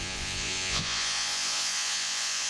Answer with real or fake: fake